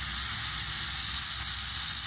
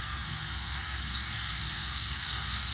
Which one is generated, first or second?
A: second